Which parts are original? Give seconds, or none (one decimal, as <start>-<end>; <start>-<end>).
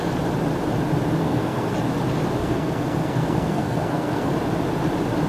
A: 0.0-1.2; 1.7-2.4; 4.3-5.3